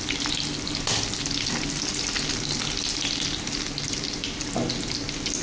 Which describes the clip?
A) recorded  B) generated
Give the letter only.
A